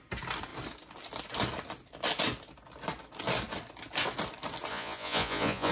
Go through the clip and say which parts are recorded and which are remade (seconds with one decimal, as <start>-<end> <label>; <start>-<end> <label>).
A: 0.0-4.7 recorded; 4.7-5.7 remade

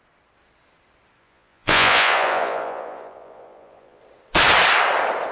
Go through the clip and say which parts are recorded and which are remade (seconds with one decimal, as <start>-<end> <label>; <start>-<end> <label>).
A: 0.0-1.2 recorded; 1.2-4.0 remade; 4.0-5.3 recorded

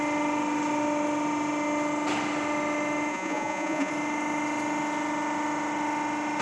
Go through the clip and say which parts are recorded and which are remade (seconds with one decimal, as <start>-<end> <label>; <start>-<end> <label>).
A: 0.0-3.1 recorded; 3.1-3.9 remade; 3.9-6.4 recorded

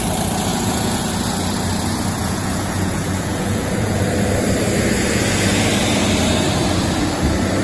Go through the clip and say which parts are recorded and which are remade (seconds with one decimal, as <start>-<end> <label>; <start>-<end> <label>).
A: 0.0-0.5 recorded; 0.5-1.1 remade; 1.1-2.2 recorded; 2.2-4.0 remade; 4.0-7.6 recorded

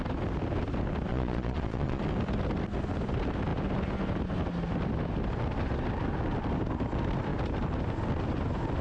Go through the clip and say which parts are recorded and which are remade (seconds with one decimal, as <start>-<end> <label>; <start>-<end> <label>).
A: 0.0-1.1 recorded; 1.1-2.0 remade; 2.0-8.8 recorded